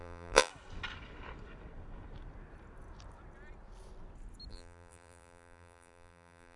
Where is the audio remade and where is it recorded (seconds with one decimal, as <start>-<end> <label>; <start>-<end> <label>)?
0.0-0.5 remade; 0.5-4.5 recorded; 4.5-6.6 remade